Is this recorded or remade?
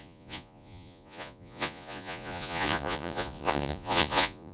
remade